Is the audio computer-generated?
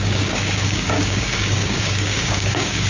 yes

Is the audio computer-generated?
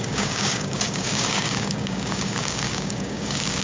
yes